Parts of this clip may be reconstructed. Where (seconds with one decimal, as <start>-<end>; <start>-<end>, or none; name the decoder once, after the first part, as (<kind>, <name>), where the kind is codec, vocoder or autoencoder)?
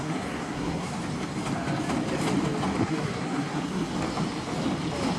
0.0-1.0 (codec, SNAC); 2.8-3.9